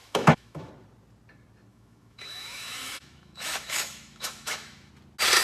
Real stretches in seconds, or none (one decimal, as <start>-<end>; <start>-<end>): 0.7-1.7; 4.9-5.4